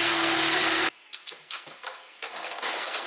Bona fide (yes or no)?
no